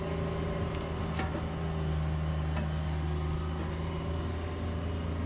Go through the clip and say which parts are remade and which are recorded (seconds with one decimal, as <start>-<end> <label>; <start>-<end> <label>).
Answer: 0.0-5.3 recorded